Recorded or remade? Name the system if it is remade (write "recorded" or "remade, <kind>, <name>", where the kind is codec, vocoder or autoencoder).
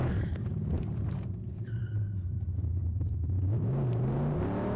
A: remade, vocoder, BigVGAN v2